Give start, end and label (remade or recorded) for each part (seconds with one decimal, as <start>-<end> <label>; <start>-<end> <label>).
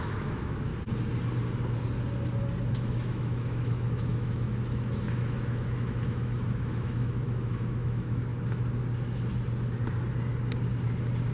0.0-0.7 remade; 0.7-2.7 recorded; 2.7-8.3 remade; 8.3-11.3 recorded